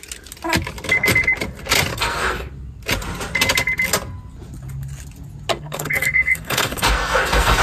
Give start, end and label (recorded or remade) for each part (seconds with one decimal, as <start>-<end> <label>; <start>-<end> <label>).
0.0-1.9 recorded; 1.9-2.5 remade; 2.5-5.5 recorded; 5.5-7.6 remade